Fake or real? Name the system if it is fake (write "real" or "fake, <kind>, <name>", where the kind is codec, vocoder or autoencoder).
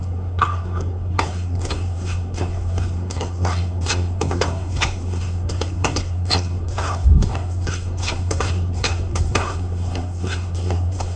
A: fake, codec, SNAC